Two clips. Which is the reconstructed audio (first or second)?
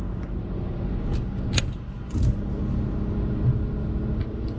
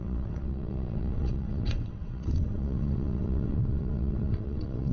second